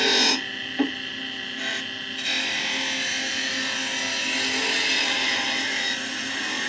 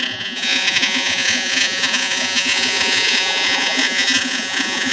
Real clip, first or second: first